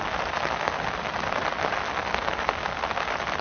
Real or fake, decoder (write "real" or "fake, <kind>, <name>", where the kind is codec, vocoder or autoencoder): real